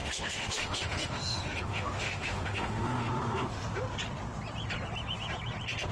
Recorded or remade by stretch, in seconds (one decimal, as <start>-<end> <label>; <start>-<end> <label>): 0.0-3.5 remade; 3.5-5.9 recorded